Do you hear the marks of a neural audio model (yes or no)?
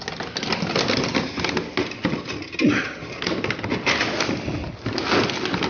no